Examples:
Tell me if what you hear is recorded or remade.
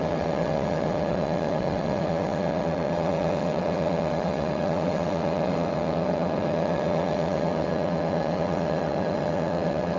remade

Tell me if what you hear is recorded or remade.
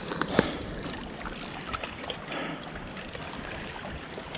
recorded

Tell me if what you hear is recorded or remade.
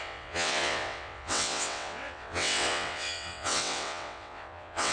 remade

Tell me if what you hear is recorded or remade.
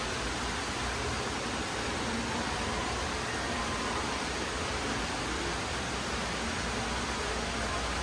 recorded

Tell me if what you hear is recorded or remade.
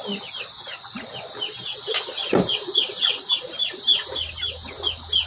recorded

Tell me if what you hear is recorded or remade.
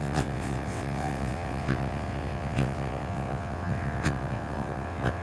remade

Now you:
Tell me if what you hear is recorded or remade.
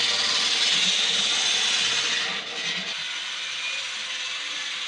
recorded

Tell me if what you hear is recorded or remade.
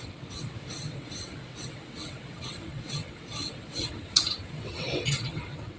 remade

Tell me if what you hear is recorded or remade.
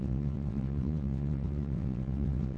remade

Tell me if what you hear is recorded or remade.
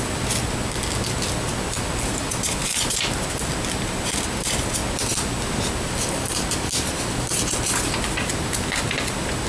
recorded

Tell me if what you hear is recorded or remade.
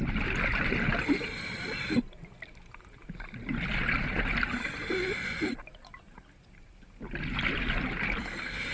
recorded